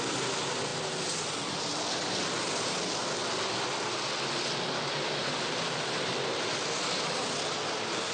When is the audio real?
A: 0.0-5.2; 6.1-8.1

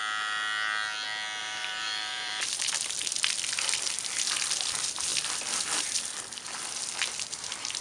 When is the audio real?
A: 0.0-1.4; 2.5-5.1

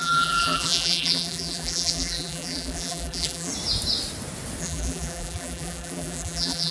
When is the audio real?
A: 3.5-4.6

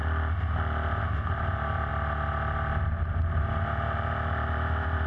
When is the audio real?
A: 0.0-1.0; 1.9-3.1

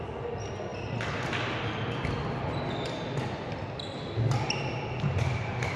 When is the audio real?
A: 0.0-5.8

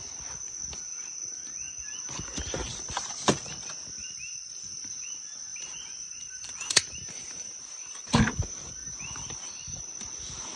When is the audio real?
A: 0.0-4.0; 5.0-5.5; 8.1-8.8; 10.2-10.6

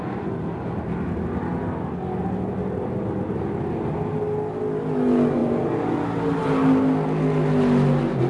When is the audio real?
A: 0.0-8.3

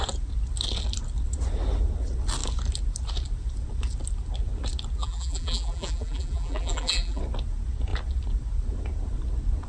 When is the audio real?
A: 0.0-5.0; 7.2-9.7